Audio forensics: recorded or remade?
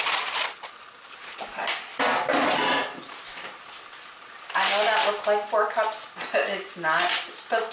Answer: recorded